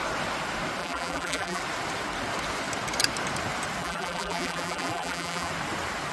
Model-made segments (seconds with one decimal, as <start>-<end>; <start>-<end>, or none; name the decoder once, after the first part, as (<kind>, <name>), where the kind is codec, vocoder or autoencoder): 0.8-1.6 (vocoder, BigVGAN v2); 3.8-5.5